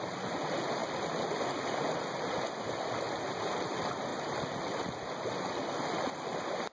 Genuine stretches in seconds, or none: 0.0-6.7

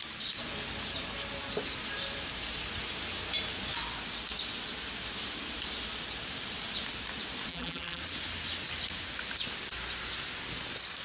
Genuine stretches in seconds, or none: 0.0-7.5; 8.0-11.0

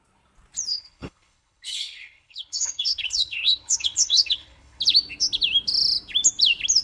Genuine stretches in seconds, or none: 0.0-0.7; 4.8-6.8